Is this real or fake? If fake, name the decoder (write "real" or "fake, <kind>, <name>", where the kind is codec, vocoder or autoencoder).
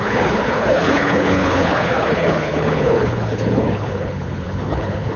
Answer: fake, codec, HILCodec